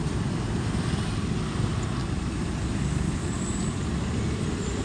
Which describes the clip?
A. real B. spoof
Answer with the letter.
A